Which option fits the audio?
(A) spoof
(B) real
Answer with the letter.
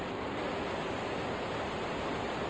B